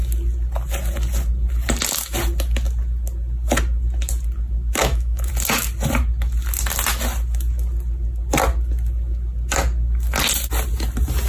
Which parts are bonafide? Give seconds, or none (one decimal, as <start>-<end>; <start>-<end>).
0.0-4.8; 5.3-11.3